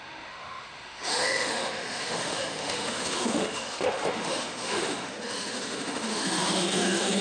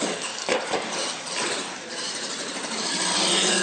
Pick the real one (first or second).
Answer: second